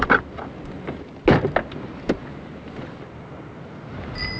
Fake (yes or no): no